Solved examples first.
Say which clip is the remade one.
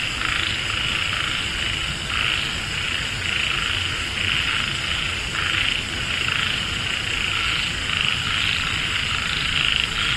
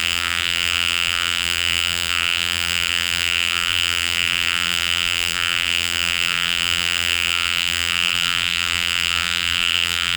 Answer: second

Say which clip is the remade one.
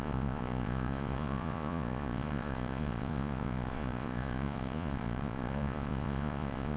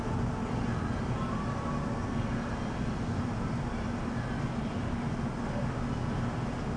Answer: first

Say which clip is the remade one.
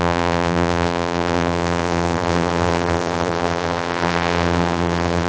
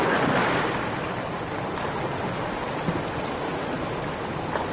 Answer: first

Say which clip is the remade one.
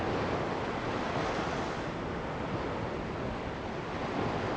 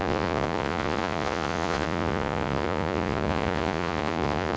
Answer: second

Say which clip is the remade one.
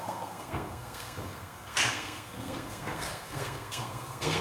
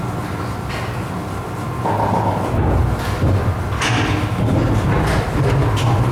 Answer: first